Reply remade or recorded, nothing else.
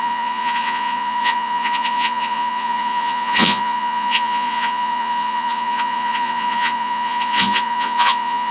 remade